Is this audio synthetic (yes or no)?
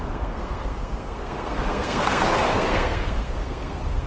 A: yes